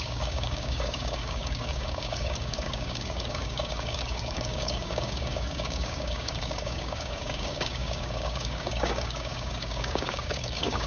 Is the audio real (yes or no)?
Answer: no